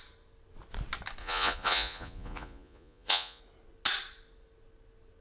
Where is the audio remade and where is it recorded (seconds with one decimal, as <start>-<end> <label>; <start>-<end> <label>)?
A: 0.0-1.2 recorded; 1.2-3.4 remade; 3.4-5.2 recorded